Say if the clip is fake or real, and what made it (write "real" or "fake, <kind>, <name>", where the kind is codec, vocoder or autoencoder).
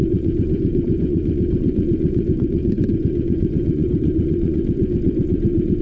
fake, vocoder, Vocos